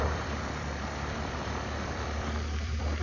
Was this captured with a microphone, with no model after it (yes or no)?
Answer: no